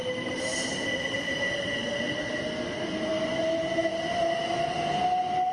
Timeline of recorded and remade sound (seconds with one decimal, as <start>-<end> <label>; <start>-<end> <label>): 0.0-2.4 remade; 2.4-3.1 recorded; 3.1-3.9 remade; 3.9-5.5 recorded